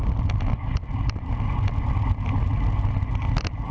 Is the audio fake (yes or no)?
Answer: no